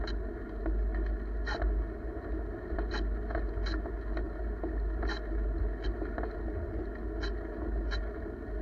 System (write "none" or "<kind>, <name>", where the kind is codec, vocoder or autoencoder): none